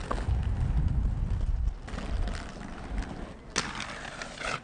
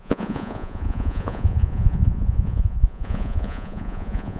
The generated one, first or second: second